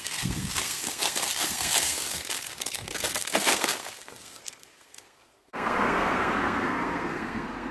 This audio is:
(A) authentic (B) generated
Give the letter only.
B